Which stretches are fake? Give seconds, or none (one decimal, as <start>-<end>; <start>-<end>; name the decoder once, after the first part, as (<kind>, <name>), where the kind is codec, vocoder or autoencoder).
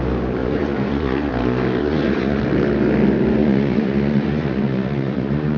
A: 0.4-1.3 (vocoder, Vocos); 1.8-2.4; 3.4-5.6